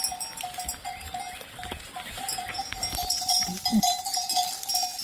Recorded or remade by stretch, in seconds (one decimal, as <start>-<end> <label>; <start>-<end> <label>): 0.0-3.0 recorded; 3.0-4.0 remade; 4.0-5.0 recorded